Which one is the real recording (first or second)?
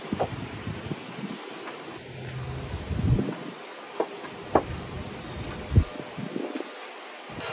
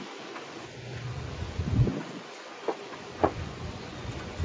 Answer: first